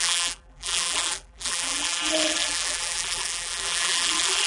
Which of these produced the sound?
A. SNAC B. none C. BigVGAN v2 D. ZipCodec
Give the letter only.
C